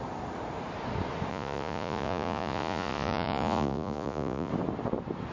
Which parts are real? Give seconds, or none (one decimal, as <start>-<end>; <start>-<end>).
0.0-1.3; 4.5-5.3

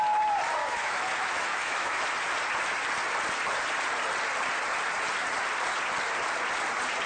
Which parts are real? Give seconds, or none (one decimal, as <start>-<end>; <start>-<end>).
0.0-0.6; 2.0-7.1

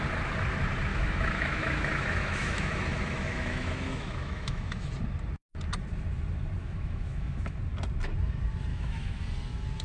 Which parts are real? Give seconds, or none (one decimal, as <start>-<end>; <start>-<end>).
0.0-0.9; 4.9-6.6; 7.6-8.7; 9.2-9.8

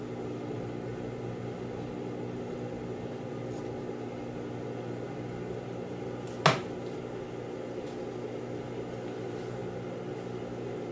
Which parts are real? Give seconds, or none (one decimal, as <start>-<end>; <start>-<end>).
0.0-10.9

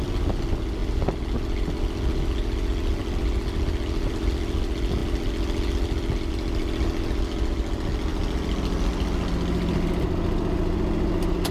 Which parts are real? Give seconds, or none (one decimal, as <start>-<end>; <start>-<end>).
0.0-11.5

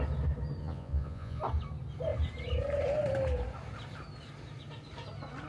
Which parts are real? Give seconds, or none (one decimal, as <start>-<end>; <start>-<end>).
0.0-0.6; 1.4-5.5

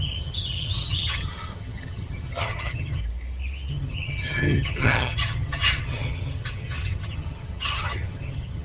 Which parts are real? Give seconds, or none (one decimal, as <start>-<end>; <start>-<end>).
3.0-3.7